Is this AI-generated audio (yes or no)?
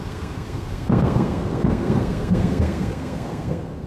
yes